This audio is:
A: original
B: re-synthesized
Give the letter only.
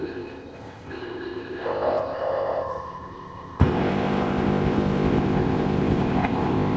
B